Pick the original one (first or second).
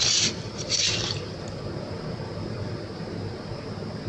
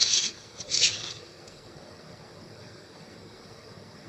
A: first